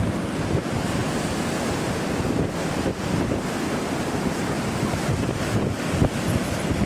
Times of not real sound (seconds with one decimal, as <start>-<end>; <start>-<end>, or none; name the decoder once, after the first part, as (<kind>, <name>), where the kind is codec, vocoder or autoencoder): none